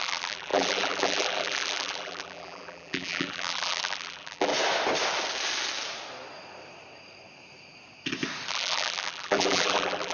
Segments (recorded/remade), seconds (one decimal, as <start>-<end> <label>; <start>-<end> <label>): 0.0-4.5 remade; 4.5-8.5 recorded; 8.5-10.1 remade